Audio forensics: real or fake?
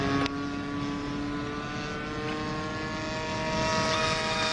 real